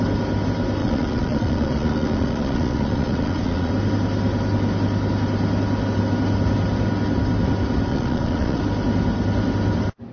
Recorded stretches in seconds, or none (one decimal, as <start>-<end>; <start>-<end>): 0.0-0.8; 3.7-7.9; 8.6-10.1